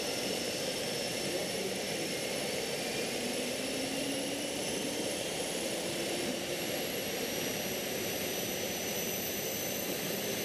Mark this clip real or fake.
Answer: fake